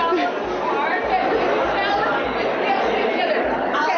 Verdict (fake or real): real